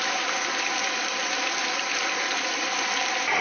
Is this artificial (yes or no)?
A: yes